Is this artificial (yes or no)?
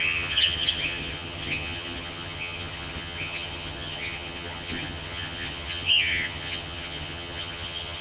yes